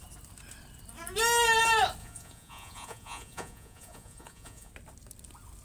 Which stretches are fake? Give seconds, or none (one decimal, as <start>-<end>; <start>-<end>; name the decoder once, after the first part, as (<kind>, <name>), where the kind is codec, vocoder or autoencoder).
2.0-4.7 (vocoder, Vocos)